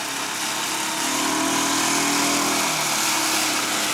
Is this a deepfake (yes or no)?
no